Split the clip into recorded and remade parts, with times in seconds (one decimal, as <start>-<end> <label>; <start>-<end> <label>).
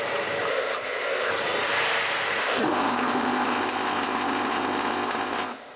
0.0-0.5 recorded; 0.5-1.3 remade; 1.3-2.4 recorded; 2.4-5.8 remade